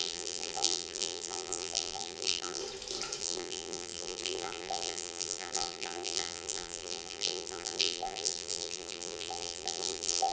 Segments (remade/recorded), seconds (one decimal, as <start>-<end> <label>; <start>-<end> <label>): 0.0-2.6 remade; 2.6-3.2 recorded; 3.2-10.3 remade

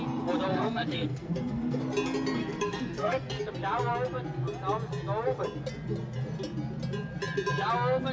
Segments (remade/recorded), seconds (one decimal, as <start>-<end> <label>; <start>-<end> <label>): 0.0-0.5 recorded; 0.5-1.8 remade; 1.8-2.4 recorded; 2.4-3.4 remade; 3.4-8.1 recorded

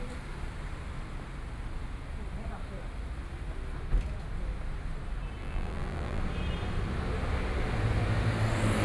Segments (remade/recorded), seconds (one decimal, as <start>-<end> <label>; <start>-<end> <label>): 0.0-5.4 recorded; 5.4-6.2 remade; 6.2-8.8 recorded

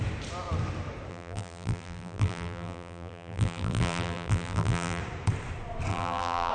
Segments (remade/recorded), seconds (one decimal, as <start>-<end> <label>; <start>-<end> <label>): 0.0-1.1 recorded; 1.1-5.0 remade; 5.0-5.9 recorded; 5.9-6.5 remade